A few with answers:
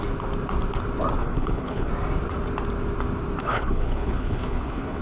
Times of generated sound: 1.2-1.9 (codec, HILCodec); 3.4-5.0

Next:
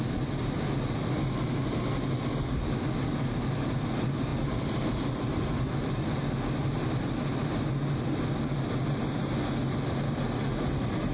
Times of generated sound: none

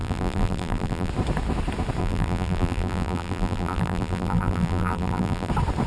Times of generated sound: 0.0-1.1 (vocoder, BigVGAN v2); 2.0-5.5

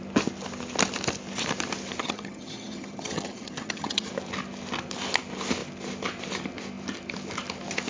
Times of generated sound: 2.0-4.1 (vocoder, HiFi-GAN)

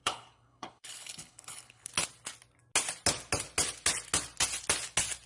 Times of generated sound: 0.0-1.9 (codec, HILCodec)

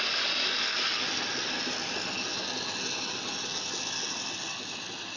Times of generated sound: none

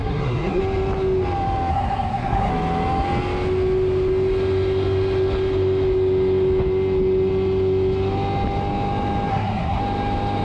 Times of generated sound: 0.0-0.6 (codec, SNAC); 1.7-2.5; 9.3-9.8